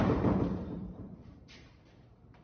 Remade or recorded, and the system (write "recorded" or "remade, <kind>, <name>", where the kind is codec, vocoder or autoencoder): remade, vocoder, BigVGAN v2